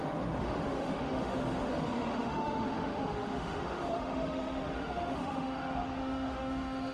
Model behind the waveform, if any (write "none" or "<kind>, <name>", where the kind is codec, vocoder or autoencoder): autoencoder, DAC-VAE